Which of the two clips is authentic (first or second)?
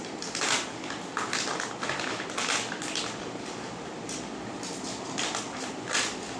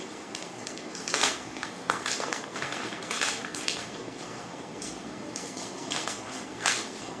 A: first